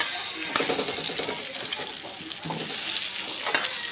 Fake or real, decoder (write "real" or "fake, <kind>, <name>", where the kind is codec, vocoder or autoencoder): real